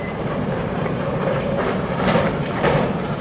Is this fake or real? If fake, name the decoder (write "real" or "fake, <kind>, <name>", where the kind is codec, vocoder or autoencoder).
fake, vocoder, BigVGAN v2